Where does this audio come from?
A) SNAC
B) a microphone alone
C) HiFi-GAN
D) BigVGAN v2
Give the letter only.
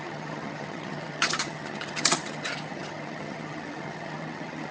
C